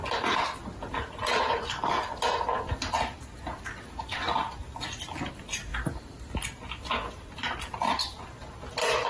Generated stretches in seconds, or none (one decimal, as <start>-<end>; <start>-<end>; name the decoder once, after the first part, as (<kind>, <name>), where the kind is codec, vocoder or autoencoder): none